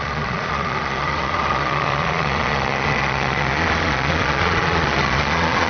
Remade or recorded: remade